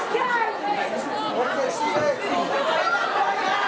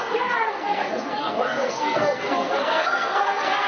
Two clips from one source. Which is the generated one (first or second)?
second